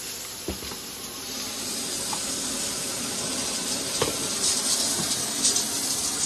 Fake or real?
real